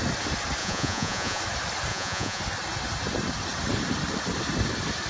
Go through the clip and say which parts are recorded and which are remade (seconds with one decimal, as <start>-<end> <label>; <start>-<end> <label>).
0.0-0.6 recorded; 0.6-1.4 remade; 1.4-1.9 recorded; 1.9-2.4 remade; 2.4-5.1 recorded